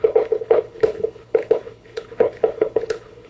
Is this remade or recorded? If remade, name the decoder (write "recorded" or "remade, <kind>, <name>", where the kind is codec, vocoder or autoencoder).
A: remade, codec, HILCodec